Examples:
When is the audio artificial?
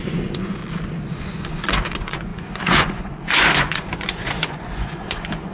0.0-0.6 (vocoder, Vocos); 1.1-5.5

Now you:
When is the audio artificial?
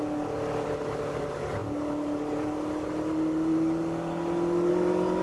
1.6-4.7 (vocoder, BigVGAN v2)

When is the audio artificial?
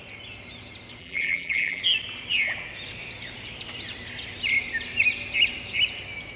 1.0-1.8 (vocoder, BigVGAN v2)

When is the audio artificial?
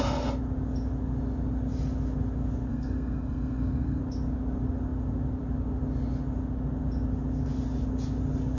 2.7-4.0 (codec, SNAC)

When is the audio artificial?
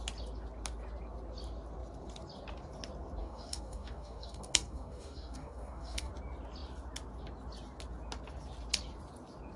3.2-6.1 (codec, DAC)